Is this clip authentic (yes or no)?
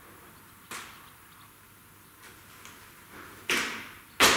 yes